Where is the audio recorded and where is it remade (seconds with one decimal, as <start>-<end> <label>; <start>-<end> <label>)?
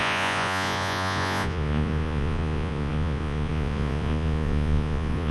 0.0-5.3 remade